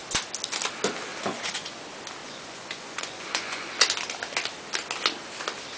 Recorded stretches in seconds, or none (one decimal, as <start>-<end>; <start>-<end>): 0.0-1.1; 1.8-2.2; 3.7-5.8